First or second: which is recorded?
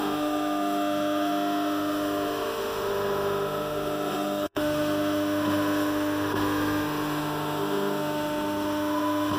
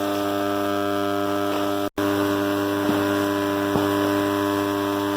second